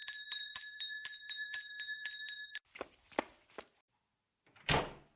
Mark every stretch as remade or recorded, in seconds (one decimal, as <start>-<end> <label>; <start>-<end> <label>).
0.0-3.1 remade; 3.1-5.2 recorded